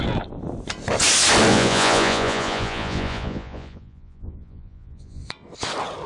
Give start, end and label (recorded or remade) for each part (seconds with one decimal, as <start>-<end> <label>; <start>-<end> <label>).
0.0-1.5 recorded; 1.5-5.2 remade; 5.2-6.1 recorded

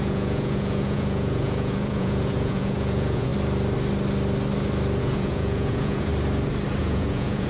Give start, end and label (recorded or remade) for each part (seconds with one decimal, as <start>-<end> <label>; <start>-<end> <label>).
0.0-3.3 remade; 3.3-5.0 recorded; 5.0-6.1 remade; 6.1-6.8 recorded; 6.8-7.5 remade

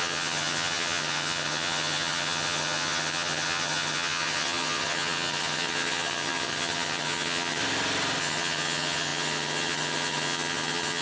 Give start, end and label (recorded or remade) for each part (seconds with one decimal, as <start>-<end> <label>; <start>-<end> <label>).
0.0-7.6 remade; 7.6-8.2 recorded; 8.2-11.0 remade

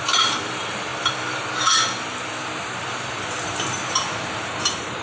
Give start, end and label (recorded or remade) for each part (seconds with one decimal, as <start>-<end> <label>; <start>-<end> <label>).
0.0-0.9 remade; 0.9-2.9 recorded; 2.9-5.0 remade